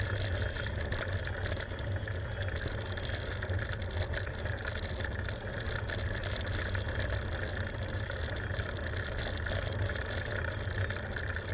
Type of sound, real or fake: real